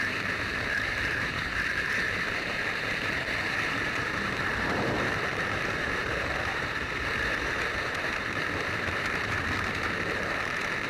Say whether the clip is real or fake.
fake